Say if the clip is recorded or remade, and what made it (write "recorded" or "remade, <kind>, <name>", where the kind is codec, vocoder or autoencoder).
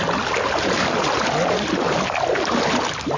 recorded